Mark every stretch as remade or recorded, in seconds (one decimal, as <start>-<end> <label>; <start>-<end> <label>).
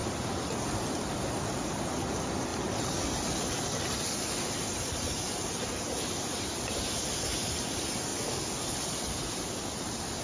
0.0-10.2 recorded